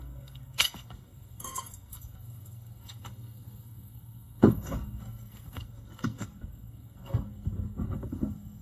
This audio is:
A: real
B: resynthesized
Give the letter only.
B